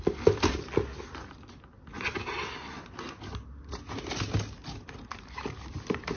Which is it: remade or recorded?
recorded